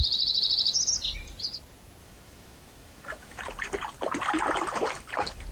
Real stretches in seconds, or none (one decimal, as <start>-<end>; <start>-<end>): 0.0-2.0; 3.4-5.5